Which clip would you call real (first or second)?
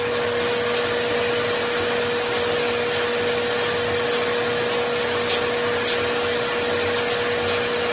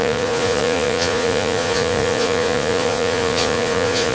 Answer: first